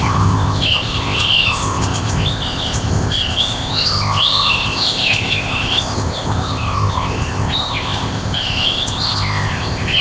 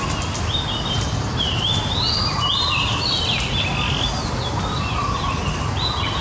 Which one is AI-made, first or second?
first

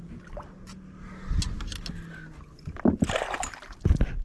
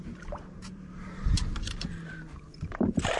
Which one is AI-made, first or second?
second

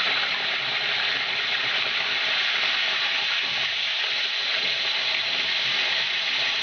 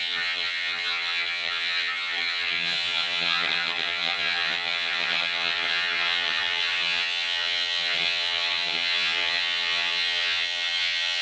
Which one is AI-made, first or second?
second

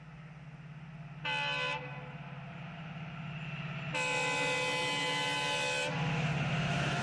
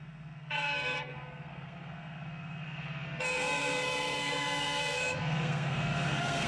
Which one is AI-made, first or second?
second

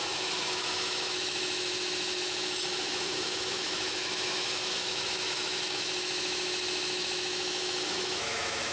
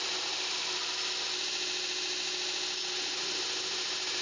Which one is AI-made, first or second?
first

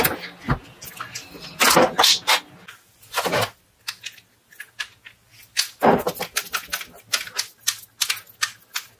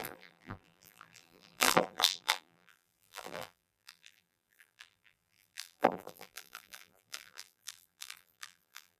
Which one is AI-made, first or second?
second